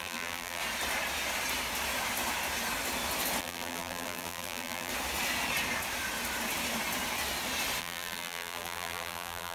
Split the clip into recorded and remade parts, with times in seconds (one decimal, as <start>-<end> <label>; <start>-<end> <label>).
0.0-0.6 remade; 0.6-3.4 recorded; 3.4-4.9 remade; 4.9-7.8 recorded; 7.8-9.5 remade